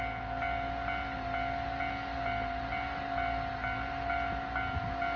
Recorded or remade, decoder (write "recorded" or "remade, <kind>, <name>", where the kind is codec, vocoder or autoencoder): recorded